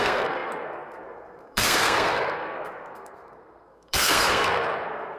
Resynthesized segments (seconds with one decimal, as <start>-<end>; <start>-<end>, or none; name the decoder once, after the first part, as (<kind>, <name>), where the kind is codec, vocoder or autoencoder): 0.0-5.2 (codec, SNAC)